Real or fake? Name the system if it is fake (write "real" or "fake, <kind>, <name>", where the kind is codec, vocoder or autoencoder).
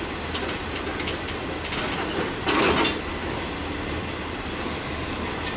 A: real